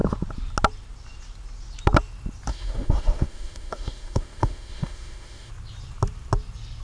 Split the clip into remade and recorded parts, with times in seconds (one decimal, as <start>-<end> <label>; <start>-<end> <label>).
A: 0.0-2.5 recorded; 2.5-5.5 remade; 5.5-6.8 recorded